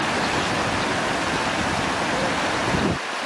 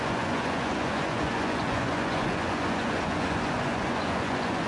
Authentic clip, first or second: first